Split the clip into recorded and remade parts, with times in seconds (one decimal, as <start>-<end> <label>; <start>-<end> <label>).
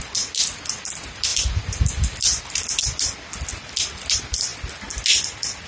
0.0-5.7 recorded